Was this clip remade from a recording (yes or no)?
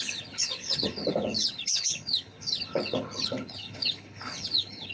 yes